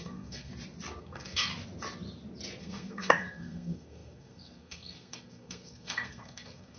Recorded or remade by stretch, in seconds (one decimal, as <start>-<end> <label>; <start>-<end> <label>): 0.0-0.5 remade; 0.5-1.0 recorded; 1.0-1.5 remade; 1.5-2.6 recorded; 2.6-6.8 remade